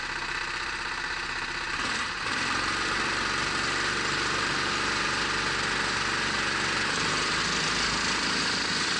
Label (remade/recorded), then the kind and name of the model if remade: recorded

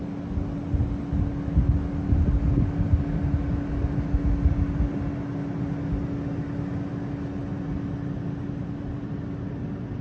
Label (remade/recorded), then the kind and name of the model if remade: recorded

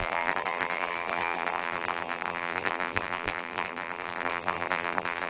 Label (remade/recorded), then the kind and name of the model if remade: remade, vocoder, BigVGAN v2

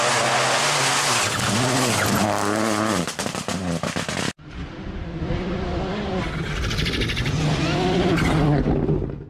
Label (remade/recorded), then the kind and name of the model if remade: recorded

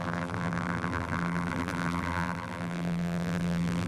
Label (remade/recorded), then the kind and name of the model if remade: remade, vocoder, BigVGAN v2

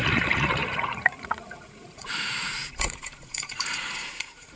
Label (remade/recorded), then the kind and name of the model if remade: remade, vocoder, Vocos